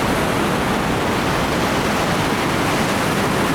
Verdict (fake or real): real